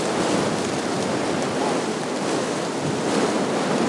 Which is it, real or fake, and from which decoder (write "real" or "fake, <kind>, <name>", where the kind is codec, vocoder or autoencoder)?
real